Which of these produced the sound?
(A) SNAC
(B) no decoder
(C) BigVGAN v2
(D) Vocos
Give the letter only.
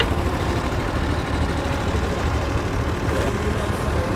C